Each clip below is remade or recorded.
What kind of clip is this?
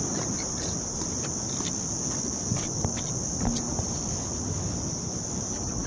recorded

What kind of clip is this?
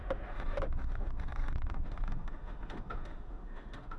remade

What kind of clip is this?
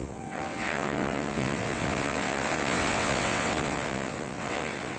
remade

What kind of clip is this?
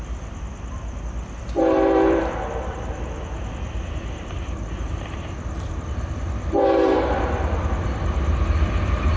remade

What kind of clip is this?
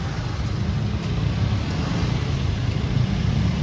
recorded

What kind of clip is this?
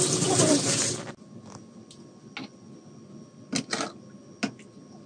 recorded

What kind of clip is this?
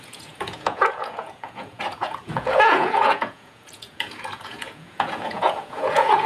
remade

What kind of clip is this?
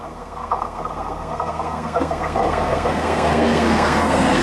remade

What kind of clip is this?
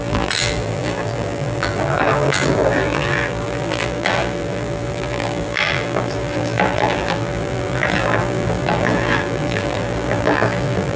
remade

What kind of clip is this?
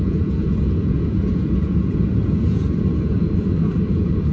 remade